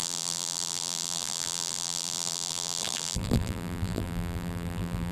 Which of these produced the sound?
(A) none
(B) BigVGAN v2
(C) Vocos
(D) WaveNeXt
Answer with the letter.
B